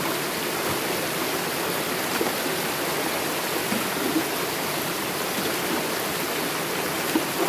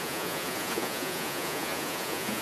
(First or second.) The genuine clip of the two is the first